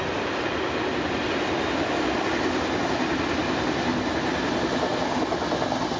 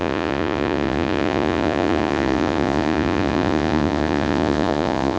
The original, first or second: first